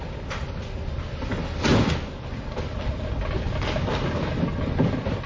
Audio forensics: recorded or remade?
recorded